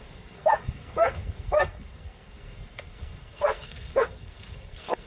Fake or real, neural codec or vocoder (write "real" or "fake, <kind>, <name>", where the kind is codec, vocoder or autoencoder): fake, codec, SNAC